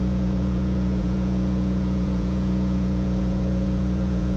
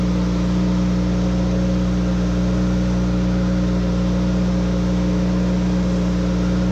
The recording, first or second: second